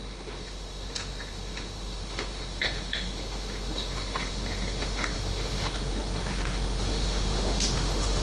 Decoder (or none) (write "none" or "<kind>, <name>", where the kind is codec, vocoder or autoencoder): autoencoder, DAC-VAE